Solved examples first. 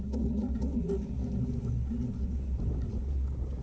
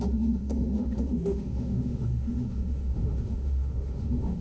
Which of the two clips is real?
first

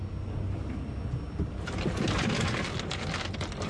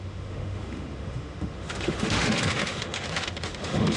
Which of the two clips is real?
first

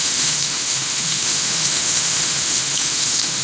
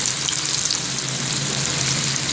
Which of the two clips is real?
second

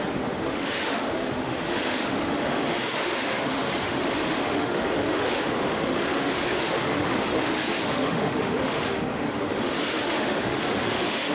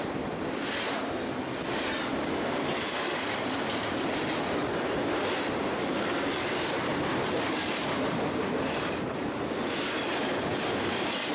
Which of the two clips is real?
second